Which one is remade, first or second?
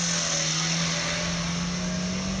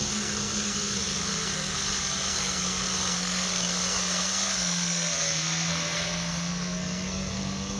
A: second